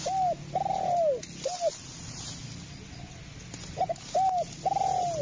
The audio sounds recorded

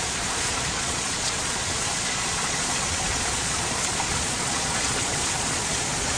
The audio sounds remade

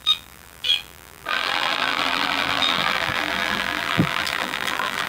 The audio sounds remade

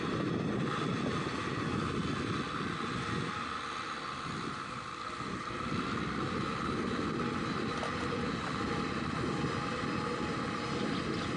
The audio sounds recorded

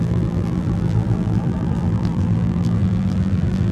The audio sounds remade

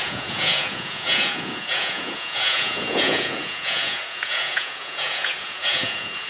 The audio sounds remade